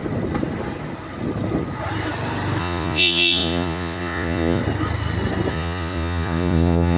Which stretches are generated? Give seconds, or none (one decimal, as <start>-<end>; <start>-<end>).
2.6-4.6; 5.5-7.0